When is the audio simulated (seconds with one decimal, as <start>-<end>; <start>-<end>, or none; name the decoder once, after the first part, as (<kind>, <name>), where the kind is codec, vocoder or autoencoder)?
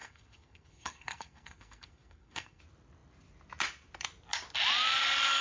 0.0-2.6 (codec, SNAC)